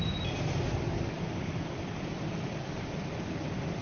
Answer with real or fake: fake